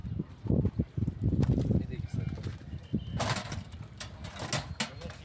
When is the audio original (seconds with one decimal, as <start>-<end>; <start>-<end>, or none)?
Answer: 0.0-5.2